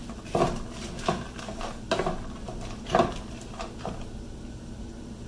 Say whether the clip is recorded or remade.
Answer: recorded